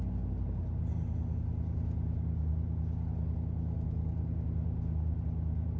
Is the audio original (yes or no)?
yes